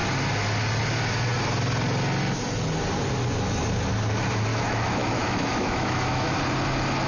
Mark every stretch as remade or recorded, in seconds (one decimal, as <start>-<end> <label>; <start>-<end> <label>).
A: 0.0-4.5 recorded; 4.5-6.4 remade; 6.4-7.1 recorded